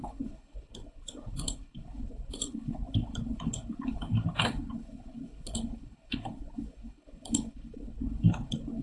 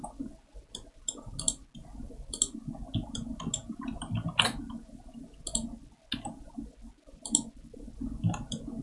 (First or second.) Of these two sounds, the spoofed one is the first